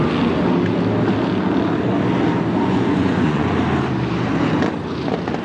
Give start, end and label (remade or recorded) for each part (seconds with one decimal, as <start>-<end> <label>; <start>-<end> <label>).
0.0-2.6 recorded; 2.6-3.6 remade; 3.6-5.4 recorded